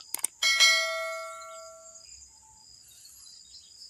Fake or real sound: real